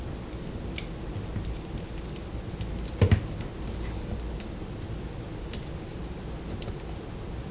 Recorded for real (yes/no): yes